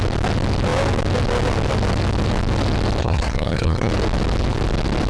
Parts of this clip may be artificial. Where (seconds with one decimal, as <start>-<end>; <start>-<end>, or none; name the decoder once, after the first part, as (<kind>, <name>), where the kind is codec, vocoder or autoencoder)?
3.0-3.9 (codec, SNAC)